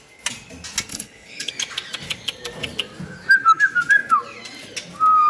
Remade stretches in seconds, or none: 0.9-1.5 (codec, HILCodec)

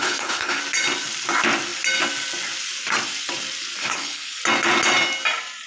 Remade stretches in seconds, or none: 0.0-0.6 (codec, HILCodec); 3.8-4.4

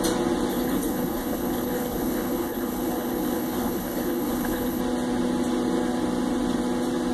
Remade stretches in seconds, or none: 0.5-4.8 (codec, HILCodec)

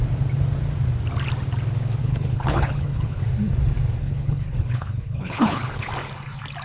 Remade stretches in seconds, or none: 2.0-3.2 (codec, HILCodec); 4.0-5.9

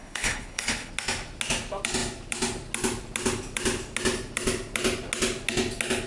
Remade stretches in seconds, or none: 0.0-0.9 (codec, HILCodec)

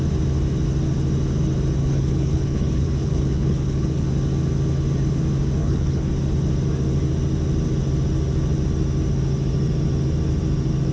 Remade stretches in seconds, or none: 1.8-4.1 (codec, HILCodec); 5.6-6.1

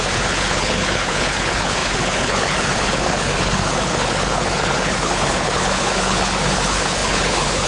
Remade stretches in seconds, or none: 0.0-7.7 (codec, HILCodec)